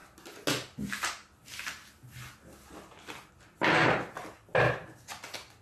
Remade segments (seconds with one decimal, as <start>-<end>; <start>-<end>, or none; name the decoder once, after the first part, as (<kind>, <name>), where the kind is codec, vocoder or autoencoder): none